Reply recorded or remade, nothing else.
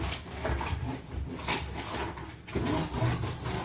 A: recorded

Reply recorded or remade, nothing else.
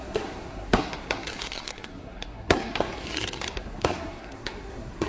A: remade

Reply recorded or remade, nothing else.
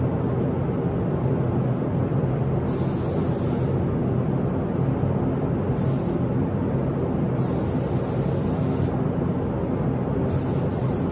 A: recorded